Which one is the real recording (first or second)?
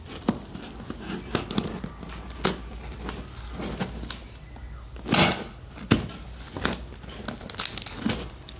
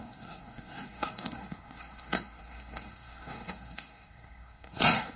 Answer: first